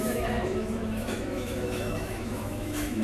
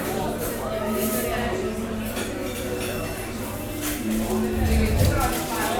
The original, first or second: second